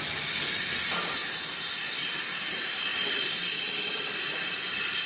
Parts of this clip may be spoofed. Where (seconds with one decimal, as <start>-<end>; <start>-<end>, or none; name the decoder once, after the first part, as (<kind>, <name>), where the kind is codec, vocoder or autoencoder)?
none